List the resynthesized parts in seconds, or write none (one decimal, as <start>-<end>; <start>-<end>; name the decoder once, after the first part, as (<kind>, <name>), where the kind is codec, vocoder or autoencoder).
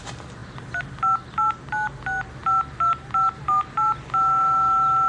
none